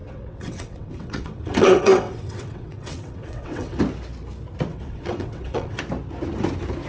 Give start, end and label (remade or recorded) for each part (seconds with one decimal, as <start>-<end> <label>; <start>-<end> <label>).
0.0-3.8 remade; 3.8-4.7 recorded; 4.7-5.8 remade; 5.8-6.9 recorded